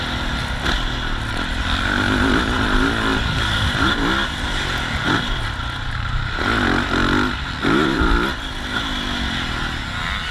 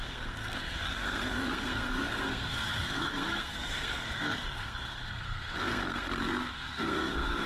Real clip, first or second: first